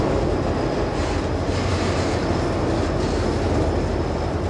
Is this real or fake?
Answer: real